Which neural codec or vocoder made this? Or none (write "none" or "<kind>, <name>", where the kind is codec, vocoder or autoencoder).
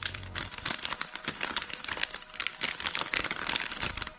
vocoder, BigVGAN v2